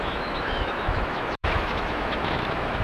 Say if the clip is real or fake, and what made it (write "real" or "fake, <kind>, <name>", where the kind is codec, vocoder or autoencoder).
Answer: fake, autoencoder, DAC-VAE